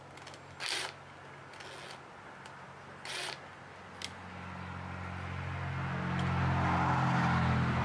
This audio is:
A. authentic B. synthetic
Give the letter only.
A